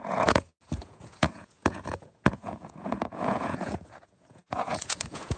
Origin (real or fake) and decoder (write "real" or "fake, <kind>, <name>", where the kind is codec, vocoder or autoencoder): fake, vocoder, Vocos